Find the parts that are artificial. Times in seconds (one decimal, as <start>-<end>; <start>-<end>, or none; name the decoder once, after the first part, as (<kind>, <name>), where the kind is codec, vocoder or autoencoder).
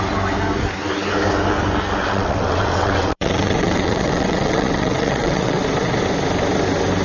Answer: 2.0-5.6 (vocoder, WaveNeXt)